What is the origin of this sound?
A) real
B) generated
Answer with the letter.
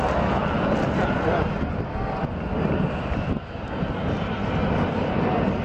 A